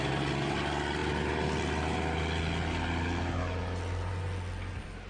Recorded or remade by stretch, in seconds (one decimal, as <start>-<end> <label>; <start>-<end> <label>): 0.0-5.1 recorded